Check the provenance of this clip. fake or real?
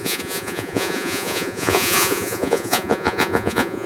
fake